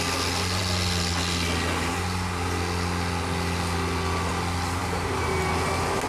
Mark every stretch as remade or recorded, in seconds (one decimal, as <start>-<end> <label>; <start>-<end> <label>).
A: 0.0-4.8 recorded; 4.8-5.4 remade; 5.4-6.1 recorded